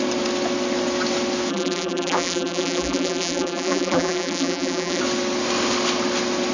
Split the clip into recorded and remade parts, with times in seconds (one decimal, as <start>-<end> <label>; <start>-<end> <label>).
0.0-1.5 recorded; 1.5-5.0 remade; 5.0-6.5 recorded

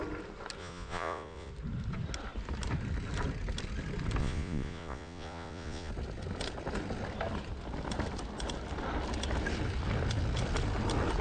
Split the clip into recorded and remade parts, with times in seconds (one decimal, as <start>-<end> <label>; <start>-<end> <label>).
0.0-0.6 recorded; 0.6-1.5 remade; 1.5-4.2 recorded; 4.2-5.9 remade; 5.9-11.2 recorded

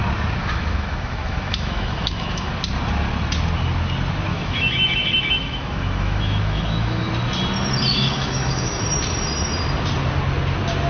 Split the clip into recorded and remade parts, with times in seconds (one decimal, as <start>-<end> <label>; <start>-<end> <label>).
0.0-0.4 recorded; 0.4-2.5 remade; 2.5-4.3 recorded; 4.3-7.1 remade; 7.1-7.9 recorded; 7.9-8.8 remade; 8.8-10.9 recorded